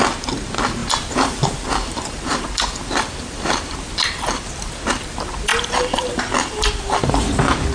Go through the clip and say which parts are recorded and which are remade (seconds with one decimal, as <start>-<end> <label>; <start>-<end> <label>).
0.0-0.8 recorded; 0.8-4.4 remade; 4.4-5.5 recorded; 5.5-7.1 remade; 7.1-7.7 recorded